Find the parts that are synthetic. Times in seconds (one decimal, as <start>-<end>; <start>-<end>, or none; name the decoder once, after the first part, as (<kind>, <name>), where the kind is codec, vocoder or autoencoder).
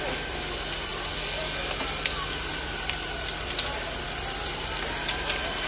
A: none